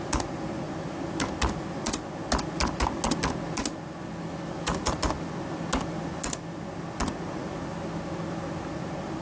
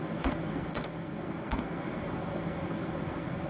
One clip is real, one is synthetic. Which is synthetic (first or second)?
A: second